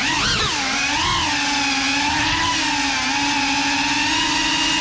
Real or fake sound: real